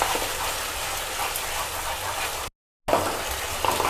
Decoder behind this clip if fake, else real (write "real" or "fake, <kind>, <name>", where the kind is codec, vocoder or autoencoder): real